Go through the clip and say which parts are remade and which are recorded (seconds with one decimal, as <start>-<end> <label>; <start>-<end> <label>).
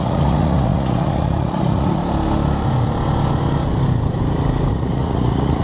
0.0-2.0 remade; 2.0-4.7 recorded; 4.7-5.6 remade